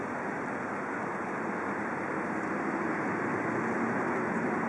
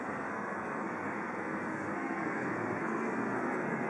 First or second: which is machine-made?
second